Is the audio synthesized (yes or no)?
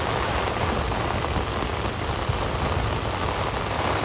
no